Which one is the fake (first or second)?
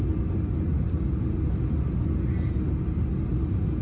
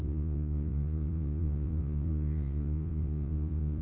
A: second